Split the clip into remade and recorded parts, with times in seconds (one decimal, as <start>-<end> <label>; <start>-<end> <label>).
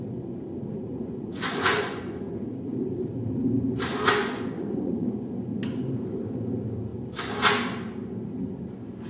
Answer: 0.0-0.9 recorded; 0.9-2.5 remade; 2.5-4.2 recorded; 4.2-5.5 remade; 5.5-9.1 recorded